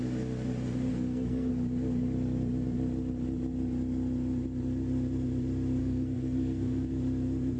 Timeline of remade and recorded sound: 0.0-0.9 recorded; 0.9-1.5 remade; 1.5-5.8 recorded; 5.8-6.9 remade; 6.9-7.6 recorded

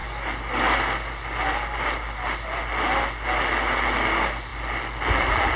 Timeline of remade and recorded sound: 0.0-5.6 recorded

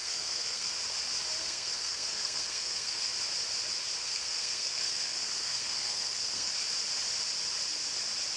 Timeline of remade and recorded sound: 0.0-0.7 remade; 0.7-1.4 recorded; 1.4-3.1 remade; 3.1-4.0 recorded; 4.0-6.5 remade; 6.5-8.4 recorded

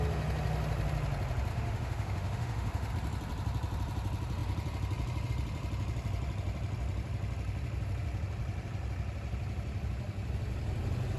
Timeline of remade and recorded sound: 0.0-1.5 recorded; 1.5-2.9 remade; 2.9-11.2 recorded

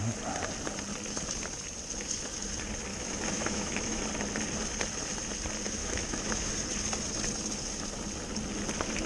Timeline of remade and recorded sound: 0.0-2.9 recorded; 2.9-4.0 remade; 4.0-5.8 recorded; 5.8-6.5 remade; 6.5-9.1 recorded

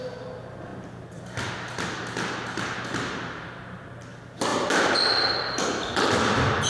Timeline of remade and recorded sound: 0.0-6.7 recorded